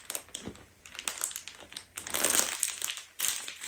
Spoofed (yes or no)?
no